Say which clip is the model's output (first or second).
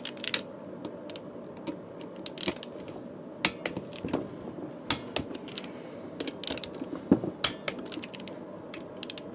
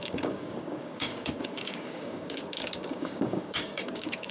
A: second